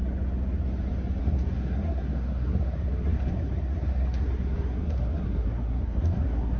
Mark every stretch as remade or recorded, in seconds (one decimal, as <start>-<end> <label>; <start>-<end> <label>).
0.0-1.2 recorded; 1.2-6.6 remade